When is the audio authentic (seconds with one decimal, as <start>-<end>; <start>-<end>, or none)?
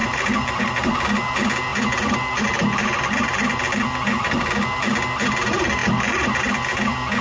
0.6-7.2